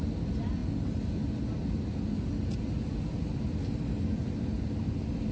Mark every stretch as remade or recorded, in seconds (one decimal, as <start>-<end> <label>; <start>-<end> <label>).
0.0-5.3 recorded